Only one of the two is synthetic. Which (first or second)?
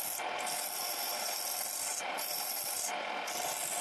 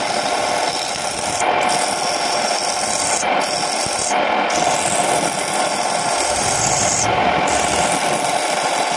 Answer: first